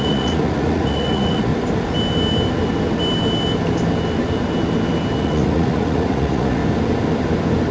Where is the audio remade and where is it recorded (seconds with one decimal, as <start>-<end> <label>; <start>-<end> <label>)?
0.0-1.5 remade; 1.5-5.2 recorded; 5.2-6.6 remade; 6.6-7.7 recorded